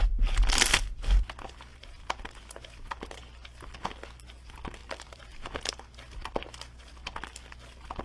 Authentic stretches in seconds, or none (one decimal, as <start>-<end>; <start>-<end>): 0.0-1.7; 3.2-4.8; 5.7-8.0